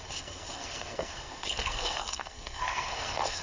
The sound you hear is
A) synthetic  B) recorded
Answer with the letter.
A